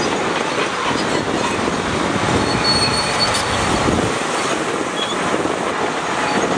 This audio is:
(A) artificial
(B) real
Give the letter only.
A